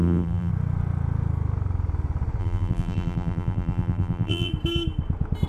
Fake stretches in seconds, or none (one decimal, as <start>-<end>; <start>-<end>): 0.0-0.5; 2.4-4.5